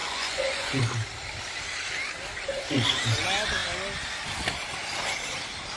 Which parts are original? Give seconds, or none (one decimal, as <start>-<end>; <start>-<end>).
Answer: 0.8-5.8